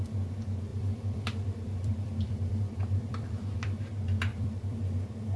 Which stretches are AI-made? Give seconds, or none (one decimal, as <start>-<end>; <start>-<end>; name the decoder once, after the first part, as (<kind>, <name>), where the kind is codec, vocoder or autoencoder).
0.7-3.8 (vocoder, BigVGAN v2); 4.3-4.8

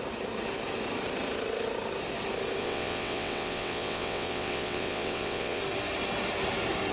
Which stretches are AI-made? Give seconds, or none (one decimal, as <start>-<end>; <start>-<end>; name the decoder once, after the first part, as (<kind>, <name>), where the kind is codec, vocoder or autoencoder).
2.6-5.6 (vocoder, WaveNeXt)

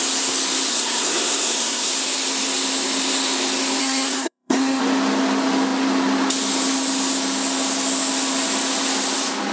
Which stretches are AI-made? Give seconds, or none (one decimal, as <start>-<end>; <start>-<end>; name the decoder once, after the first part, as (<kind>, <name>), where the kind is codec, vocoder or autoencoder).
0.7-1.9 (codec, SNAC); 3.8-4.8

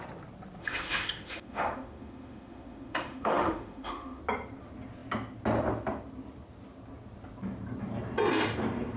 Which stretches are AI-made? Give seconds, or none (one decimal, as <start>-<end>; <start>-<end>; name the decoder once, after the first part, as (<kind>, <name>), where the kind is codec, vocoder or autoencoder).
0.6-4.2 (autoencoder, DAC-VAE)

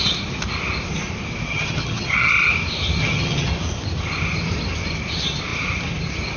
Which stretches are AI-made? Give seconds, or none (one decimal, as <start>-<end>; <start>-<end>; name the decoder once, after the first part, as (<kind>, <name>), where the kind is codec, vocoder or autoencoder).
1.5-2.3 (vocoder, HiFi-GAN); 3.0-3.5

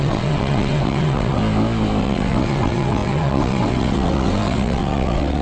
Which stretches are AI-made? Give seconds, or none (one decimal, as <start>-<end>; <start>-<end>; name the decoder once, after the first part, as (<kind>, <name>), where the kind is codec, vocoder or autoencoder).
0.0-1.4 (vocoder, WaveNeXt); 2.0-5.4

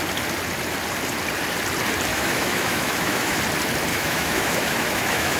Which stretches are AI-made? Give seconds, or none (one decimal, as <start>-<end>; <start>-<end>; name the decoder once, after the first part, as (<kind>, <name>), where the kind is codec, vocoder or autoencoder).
2.1-3.4 (autoencoder, DAC-VAE); 3.9-5.4